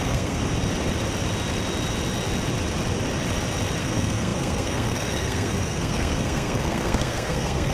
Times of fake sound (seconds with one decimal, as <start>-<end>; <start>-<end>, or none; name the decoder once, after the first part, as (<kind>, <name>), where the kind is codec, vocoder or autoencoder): 0.0-0.4 (codec, SNAC); 3.8-7.7